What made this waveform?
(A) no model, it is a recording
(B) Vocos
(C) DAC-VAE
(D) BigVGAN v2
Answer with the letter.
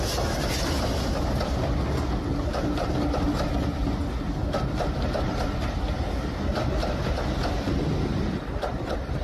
A